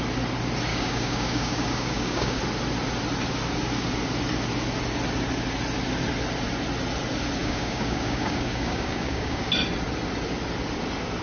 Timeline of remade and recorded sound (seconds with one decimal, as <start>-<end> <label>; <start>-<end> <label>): 0.0-0.7 recorded; 0.7-2.4 remade; 2.4-7.4 recorded; 7.4-9.4 remade; 9.4-11.2 recorded